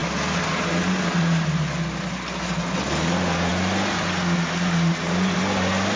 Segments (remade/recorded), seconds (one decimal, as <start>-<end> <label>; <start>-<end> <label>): 0.0-6.0 recorded

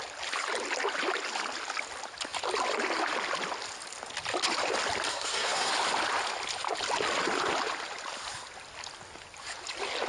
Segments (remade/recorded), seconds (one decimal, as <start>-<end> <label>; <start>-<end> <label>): 0.0-5.1 recorded; 5.1-5.7 remade; 5.7-10.1 recorded